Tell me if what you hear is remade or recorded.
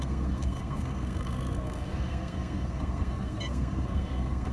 remade